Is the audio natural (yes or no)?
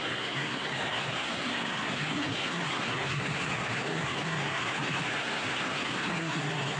no